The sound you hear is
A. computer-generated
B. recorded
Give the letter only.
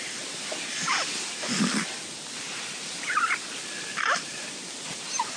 B